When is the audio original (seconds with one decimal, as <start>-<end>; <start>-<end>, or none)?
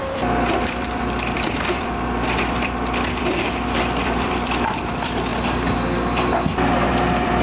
5.3-6.9